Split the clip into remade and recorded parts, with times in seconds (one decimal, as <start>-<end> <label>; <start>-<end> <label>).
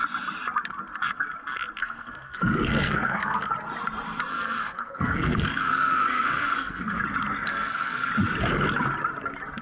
0.0-1.8 recorded; 1.8-3.5 remade; 3.5-4.3 recorded; 4.3-7.0 remade; 7.0-7.5 recorded; 7.5-8.1 remade; 8.1-9.6 recorded